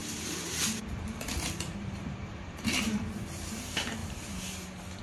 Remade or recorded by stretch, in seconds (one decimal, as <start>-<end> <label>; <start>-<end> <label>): 0.0-3.0 remade; 3.0-4.0 recorded; 4.0-5.0 remade